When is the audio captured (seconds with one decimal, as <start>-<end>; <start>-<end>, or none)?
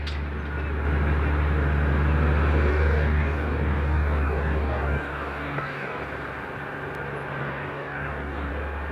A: 0.0-2.7; 6.0-7.4; 8.5-8.9